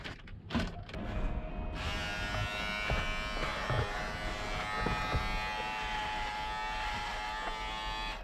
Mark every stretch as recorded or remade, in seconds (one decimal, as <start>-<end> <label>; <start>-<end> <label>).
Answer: 0.0-1.0 recorded; 1.0-1.5 remade; 1.5-8.2 recorded